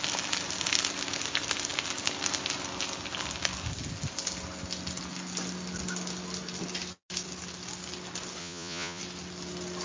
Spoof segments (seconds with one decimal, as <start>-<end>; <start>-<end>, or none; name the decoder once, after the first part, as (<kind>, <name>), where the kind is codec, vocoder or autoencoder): 8.4-9.0 (vocoder, Vocos)